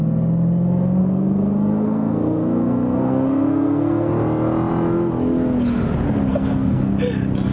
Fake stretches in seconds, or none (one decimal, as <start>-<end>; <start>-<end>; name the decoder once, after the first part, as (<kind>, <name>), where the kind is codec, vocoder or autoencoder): 1.0-4.1 (codec, SNAC); 6.3-6.9